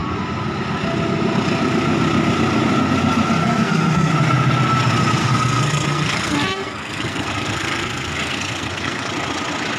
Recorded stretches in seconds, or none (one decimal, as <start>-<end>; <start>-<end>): 0.0-3.4; 4.1-5.2; 9.1-9.8